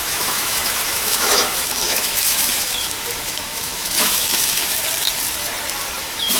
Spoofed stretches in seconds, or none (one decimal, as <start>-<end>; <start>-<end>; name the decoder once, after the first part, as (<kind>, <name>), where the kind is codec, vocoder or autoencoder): 0.0-4.8 (autoencoder, DAC-VAE); 6.0-6.4